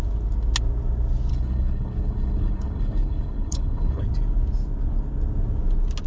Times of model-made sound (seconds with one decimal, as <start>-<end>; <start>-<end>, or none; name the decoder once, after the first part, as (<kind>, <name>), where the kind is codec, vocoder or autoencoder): 1.3-4.0 (codec, HILCodec)